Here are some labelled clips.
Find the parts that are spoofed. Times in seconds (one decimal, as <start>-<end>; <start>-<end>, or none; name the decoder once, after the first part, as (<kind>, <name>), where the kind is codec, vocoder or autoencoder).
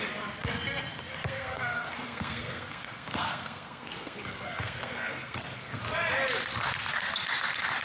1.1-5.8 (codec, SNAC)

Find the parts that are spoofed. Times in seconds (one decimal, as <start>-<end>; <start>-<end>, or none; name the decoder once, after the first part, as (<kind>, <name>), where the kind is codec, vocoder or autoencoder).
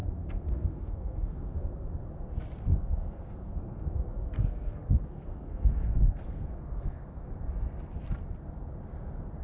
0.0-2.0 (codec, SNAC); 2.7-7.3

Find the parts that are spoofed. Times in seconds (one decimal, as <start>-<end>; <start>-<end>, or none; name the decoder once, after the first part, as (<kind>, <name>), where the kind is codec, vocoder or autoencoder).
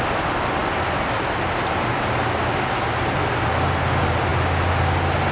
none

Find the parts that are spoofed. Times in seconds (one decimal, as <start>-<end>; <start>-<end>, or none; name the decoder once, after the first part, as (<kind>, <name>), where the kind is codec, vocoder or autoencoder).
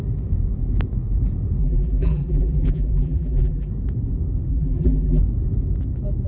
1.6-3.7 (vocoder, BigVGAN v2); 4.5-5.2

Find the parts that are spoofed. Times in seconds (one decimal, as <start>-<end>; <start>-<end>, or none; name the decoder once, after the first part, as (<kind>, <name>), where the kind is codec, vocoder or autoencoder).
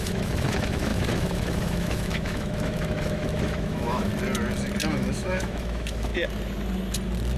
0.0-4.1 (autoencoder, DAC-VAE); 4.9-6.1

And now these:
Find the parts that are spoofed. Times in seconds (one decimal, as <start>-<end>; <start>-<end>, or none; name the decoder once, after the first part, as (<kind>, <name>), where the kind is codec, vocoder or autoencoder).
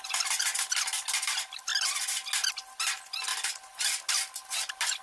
none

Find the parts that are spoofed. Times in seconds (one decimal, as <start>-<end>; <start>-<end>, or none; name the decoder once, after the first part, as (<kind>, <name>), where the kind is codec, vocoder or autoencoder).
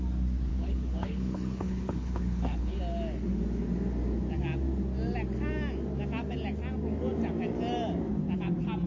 0.5-2.8 (codec, HILCodec)